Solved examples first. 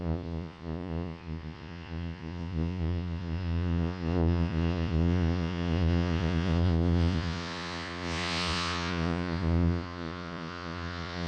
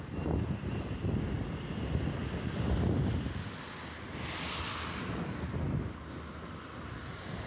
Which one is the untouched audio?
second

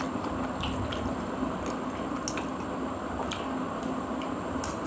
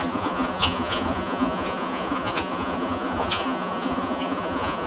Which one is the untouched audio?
first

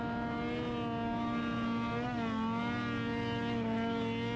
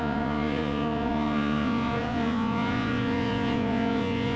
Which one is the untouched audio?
first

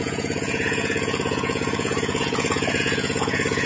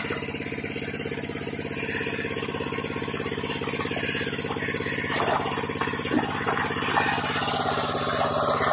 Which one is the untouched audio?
second